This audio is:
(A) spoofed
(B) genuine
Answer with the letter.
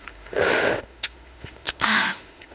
A